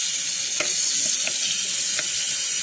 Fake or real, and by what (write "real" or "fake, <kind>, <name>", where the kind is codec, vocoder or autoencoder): real